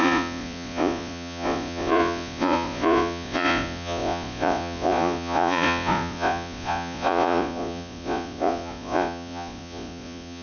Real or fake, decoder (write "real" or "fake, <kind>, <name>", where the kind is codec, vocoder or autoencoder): fake, vocoder, Vocos